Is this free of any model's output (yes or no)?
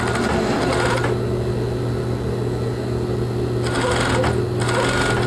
yes